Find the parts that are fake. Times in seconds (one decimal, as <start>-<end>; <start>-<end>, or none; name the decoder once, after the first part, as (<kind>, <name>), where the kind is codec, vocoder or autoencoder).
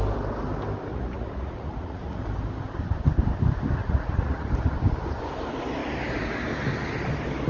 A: 0.9-2.2 (vocoder, Vocos); 3.8-4.5